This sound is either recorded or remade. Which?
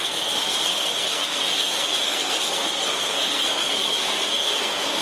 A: remade